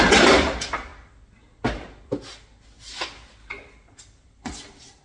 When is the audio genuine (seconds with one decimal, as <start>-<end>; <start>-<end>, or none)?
0.9-3.9